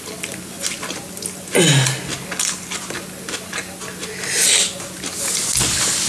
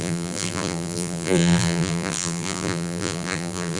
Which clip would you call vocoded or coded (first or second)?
second